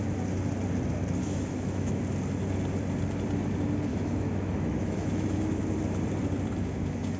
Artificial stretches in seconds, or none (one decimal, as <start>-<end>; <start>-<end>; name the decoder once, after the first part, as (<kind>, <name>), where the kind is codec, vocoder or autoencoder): 1.2-2.0 (autoencoder, DAC-VAE); 3.9-5.6